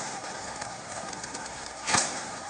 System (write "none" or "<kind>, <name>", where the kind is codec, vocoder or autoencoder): codec, SNAC